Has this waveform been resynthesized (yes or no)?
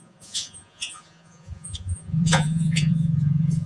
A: yes